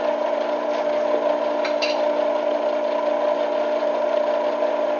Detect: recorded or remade recorded